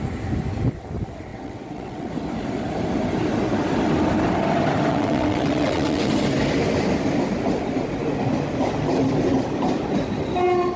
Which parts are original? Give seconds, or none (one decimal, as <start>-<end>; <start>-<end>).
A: 0.0-1.3; 2.1-4.9; 6.1-10.8